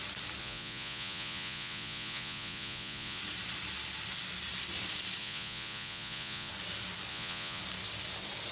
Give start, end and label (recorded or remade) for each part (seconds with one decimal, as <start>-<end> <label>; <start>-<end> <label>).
0.0-0.4 recorded; 0.4-3.2 remade; 3.2-5.2 recorded; 5.2-6.5 remade; 6.5-7.1 recorded; 7.1-7.6 remade; 7.6-8.5 recorded